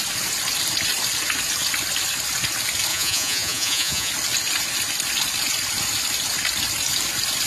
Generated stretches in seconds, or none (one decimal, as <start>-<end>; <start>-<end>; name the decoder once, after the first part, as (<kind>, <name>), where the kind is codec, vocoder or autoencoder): 2.9-4.1 (vocoder, Vocos)